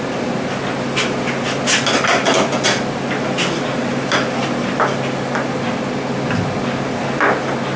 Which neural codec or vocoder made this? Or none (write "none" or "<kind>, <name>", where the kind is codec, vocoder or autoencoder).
none